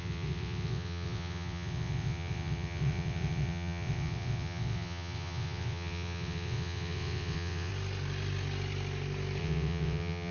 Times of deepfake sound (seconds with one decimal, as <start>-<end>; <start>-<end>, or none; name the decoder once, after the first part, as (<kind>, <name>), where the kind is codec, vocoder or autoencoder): 0.0-7.7 (vocoder, WaveNeXt); 9.4-10.3